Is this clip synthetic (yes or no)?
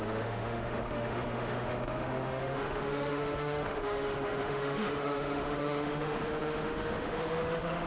yes